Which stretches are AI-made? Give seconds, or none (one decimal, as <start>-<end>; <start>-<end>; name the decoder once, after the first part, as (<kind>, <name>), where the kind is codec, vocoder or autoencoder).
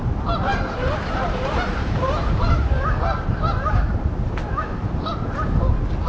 0.5-2.9 (vocoder, BigVGAN v2); 4.4-5.1